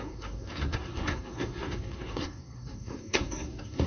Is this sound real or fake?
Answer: fake